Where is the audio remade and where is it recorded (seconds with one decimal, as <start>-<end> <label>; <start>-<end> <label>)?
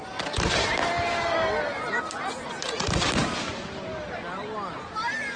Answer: 0.0-5.4 recorded